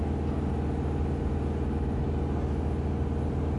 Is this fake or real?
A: real